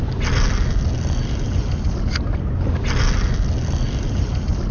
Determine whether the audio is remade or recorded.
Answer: recorded